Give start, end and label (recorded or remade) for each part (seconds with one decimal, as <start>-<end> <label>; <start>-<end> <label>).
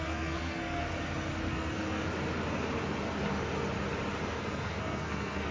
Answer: 0.0-0.8 remade; 0.8-1.5 recorded; 1.5-2.0 remade; 2.0-4.6 recorded; 4.6-5.5 remade